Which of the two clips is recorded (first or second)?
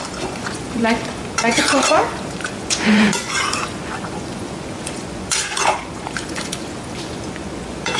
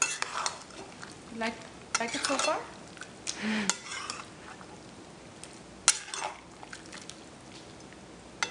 second